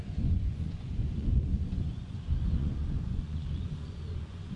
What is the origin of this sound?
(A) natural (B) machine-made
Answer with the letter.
B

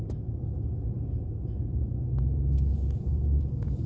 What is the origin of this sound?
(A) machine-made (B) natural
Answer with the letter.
B